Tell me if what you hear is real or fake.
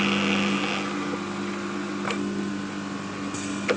real